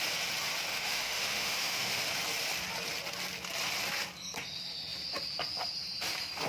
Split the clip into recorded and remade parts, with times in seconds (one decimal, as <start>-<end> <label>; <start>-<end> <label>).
0.0-0.7 recorded; 0.7-2.0 remade; 2.0-6.5 recorded